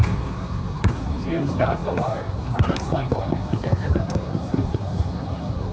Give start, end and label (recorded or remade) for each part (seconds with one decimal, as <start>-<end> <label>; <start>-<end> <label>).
0.0-5.7 remade